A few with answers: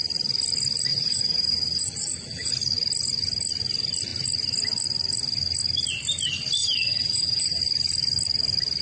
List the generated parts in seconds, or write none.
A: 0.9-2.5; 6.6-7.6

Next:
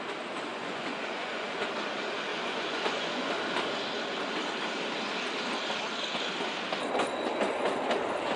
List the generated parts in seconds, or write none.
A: 0.5-1.7; 2.3-3.3

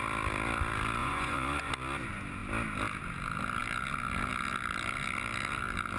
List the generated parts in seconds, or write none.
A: 1.0-1.7

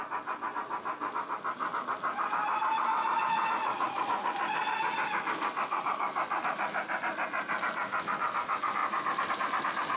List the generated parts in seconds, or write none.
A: none

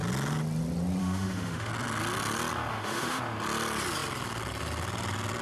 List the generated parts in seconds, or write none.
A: 1.0-1.7; 2.7-3.2

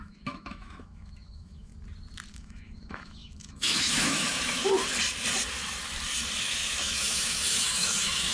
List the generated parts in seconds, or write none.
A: 0.0-1.7; 2.3-4.6; 6.4-8.3

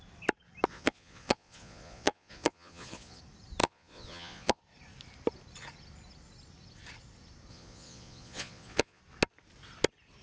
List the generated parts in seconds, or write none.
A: 0.7-3.2; 3.6-4.6; 7.5-9.0